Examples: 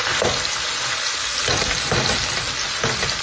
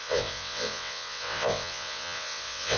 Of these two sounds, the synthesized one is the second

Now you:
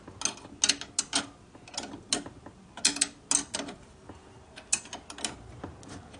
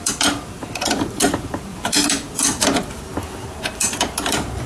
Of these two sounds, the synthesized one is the second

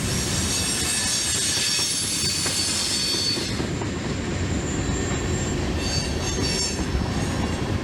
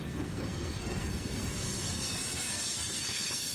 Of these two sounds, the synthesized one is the second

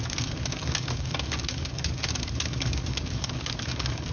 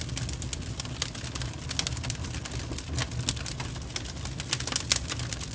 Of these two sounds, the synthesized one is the first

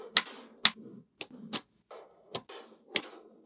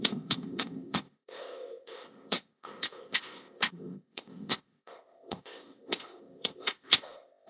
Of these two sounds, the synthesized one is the second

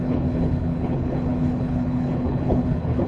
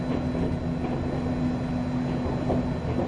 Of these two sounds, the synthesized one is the first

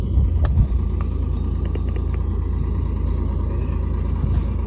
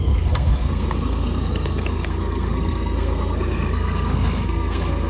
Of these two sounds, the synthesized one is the second